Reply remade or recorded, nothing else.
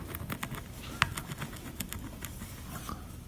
recorded